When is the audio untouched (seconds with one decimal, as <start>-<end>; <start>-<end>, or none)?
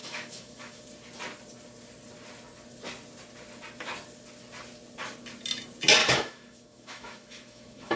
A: 0.8-6.0